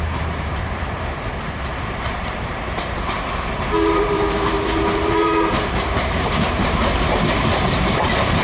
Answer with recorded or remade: remade